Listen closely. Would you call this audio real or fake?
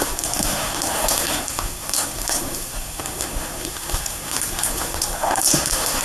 fake